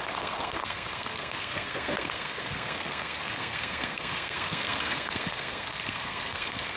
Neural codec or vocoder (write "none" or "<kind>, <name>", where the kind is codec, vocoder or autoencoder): codec, SNAC